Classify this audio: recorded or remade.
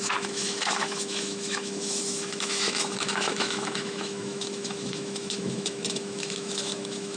remade